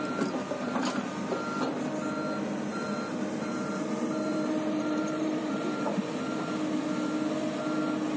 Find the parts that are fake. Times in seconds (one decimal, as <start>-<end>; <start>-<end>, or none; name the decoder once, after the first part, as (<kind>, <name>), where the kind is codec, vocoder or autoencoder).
0.6-1.1 (vocoder, BigVGAN v2); 2.7-5.4